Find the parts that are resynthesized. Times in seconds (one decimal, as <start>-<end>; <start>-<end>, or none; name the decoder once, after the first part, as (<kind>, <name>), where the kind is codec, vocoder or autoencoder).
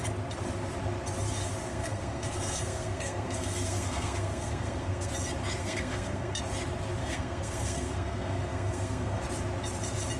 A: 1.7-5.1 (codec, SNAC); 5.6-6.4; 7.0-9.2